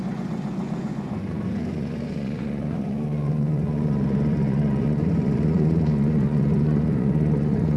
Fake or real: fake